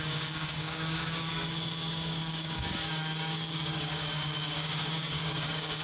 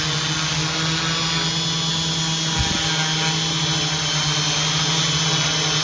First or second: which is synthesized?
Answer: first